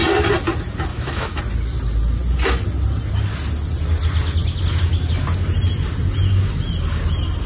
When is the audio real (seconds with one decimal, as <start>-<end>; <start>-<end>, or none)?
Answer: 0.0-0.9; 1.4-7.5